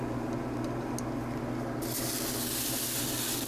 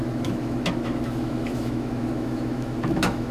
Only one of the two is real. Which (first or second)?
first